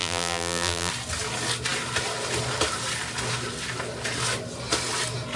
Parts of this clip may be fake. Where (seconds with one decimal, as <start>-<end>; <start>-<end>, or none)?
0.0-0.9